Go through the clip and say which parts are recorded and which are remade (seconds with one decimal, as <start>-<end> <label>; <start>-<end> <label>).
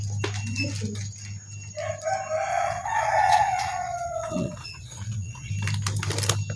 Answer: 0.0-2.5 recorded; 2.5-5.5 remade; 5.5-6.6 recorded